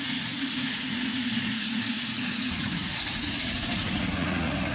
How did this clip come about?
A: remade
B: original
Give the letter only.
A